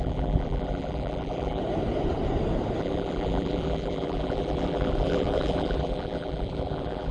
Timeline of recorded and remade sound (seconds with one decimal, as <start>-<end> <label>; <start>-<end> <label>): 0.0-1.6 remade; 1.6-2.8 recorded; 2.8-7.1 remade